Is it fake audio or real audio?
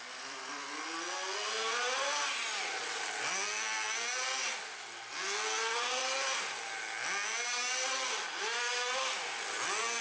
real